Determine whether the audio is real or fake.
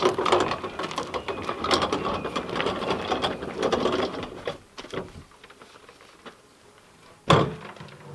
real